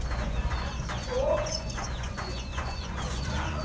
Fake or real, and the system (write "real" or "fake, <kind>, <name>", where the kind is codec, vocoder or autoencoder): fake, vocoder, Vocos